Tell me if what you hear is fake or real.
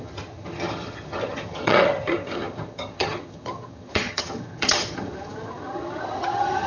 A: fake